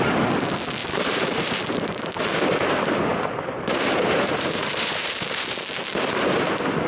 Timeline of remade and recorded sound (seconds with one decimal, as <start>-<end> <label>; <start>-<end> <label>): 0.0-0.8 recorded; 0.8-2.2 remade; 2.2-3.1 recorded; 3.1-5.9 remade; 5.9-6.9 recorded